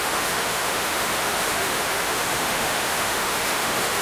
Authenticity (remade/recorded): remade